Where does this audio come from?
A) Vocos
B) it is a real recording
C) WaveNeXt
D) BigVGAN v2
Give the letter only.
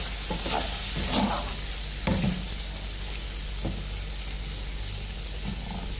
B